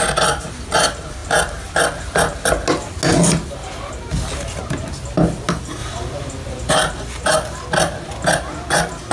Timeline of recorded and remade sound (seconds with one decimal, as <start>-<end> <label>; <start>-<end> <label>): 0.0-9.1 recorded